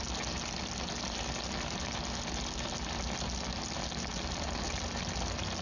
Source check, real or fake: real